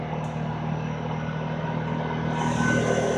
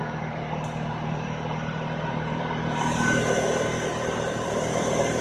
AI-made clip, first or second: second